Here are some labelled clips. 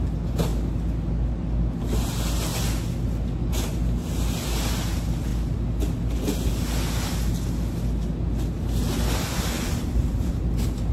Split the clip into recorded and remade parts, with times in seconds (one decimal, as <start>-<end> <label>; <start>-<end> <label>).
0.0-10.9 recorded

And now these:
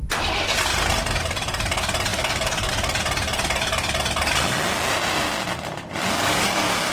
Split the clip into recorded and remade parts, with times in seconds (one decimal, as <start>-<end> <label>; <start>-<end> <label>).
0.0-2.1 recorded; 2.1-2.7 remade; 2.7-6.0 recorded; 6.0-6.9 remade

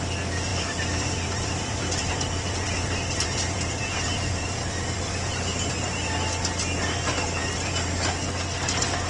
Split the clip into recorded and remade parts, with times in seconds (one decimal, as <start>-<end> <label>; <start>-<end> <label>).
0.0-0.5 recorded; 0.5-5.3 remade; 5.3-9.1 recorded

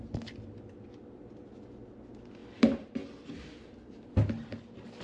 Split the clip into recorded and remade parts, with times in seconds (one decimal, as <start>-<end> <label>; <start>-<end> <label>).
0.0-2.4 recorded; 2.4-3.8 remade; 3.8-5.0 recorded

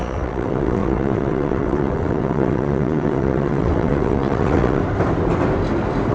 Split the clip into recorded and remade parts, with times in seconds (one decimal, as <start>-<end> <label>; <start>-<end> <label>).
0.0-4.8 remade; 4.8-6.1 recorded

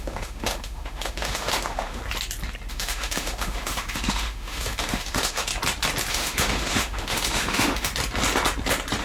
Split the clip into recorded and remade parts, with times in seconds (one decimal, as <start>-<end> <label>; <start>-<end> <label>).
0.0-2.0 remade; 2.0-2.7 recorded; 2.7-5.5 remade; 5.5-6.1 recorded; 6.1-7.9 remade; 7.9-9.0 recorded

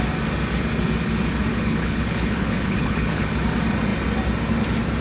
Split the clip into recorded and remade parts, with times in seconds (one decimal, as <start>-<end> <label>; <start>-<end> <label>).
0.0-1.5 recorded; 1.5-3.3 remade; 3.3-5.0 recorded

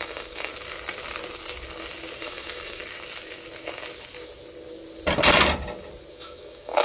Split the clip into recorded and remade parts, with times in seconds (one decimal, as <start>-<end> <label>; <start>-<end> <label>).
0.0-0.5 remade; 0.5-2.2 recorded; 2.2-2.8 remade; 2.8-6.1 recorded; 6.1-6.8 remade